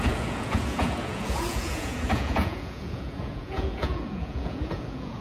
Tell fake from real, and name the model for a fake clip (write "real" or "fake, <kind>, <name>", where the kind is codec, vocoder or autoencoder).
fake, vocoder, Vocos